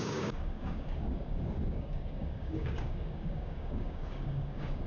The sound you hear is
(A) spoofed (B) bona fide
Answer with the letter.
A